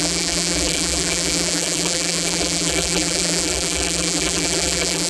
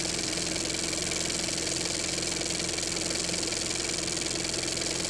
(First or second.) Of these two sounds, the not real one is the first